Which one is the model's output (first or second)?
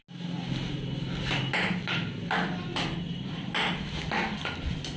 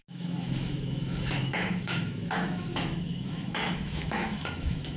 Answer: second